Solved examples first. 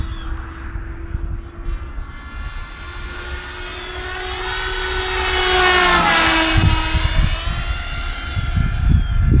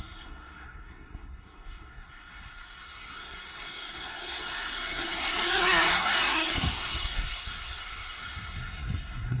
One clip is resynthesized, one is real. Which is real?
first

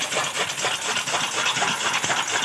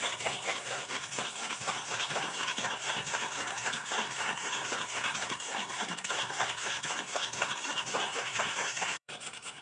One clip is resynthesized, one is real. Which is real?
first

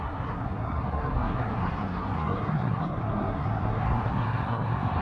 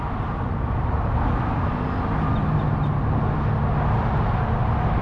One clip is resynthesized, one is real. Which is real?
second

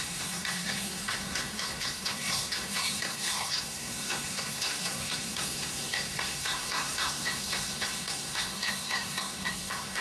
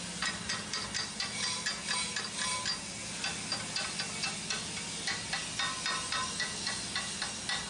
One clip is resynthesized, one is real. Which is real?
second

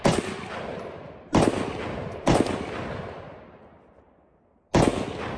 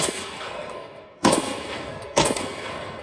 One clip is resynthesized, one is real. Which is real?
first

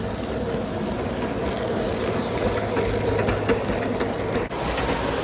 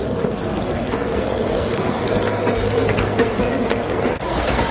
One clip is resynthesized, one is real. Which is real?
first